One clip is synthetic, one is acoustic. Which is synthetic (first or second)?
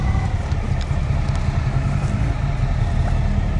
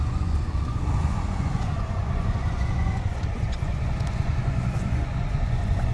second